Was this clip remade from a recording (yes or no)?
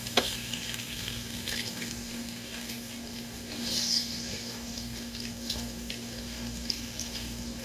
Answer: yes